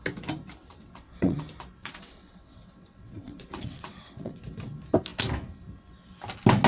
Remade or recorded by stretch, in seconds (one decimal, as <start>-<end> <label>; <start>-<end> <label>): 0.0-0.6 recorded; 0.6-1.4 remade; 1.4-1.8 recorded; 1.8-4.4 remade; 4.4-6.7 recorded